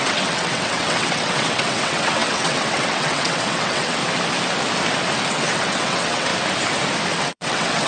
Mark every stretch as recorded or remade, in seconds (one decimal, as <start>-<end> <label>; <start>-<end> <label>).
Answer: 0.0-4.0 remade; 4.0-5.3 recorded; 5.3-6.3 remade; 6.3-7.2 recorded; 7.2-7.9 remade

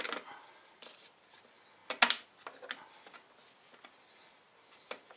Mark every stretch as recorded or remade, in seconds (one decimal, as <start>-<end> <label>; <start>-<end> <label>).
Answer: 0.0-5.2 recorded

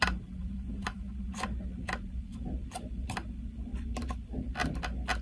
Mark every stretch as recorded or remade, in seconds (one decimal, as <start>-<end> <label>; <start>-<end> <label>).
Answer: 0.0-0.4 recorded; 0.4-1.1 remade; 1.1-5.2 recorded

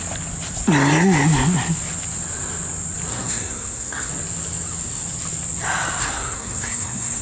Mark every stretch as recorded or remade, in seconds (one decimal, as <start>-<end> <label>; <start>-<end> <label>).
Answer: 0.0-3.1 recorded; 3.1-4.1 remade; 4.1-6.0 recorded; 6.0-7.2 remade

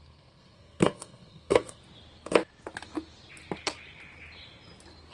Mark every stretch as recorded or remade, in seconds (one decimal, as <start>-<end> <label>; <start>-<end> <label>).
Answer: 0.0-1.8 remade; 1.8-5.1 recorded

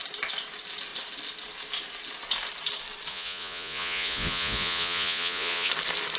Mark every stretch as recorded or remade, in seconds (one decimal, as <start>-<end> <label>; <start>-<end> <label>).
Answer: 0.0-3.1 recorded; 3.1-5.7 remade; 5.7-6.2 recorded

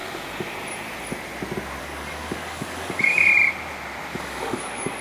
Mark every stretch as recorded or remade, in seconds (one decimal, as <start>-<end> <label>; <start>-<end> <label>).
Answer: 0.0-1.8 recorded; 1.8-3.3 remade; 3.3-4.2 recorded; 4.2-5.0 remade

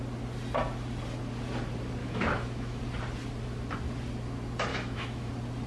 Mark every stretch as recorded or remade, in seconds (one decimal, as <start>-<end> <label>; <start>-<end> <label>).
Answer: 0.0-2.0 recorded; 2.0-2.8 remade; 2.8-4.7 recorded; 4.7-5.3 remade; 5.3-5.7 recorded